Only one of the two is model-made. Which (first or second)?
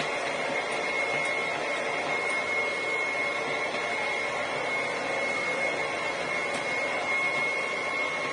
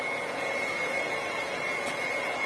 second